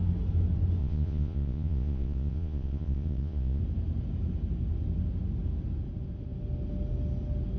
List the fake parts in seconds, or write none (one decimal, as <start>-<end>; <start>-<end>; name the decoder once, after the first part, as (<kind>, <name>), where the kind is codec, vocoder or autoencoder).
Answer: 0.8-3.6 (vocoder, Vocos)